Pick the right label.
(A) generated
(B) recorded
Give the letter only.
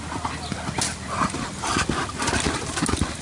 B